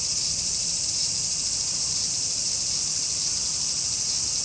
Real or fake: fake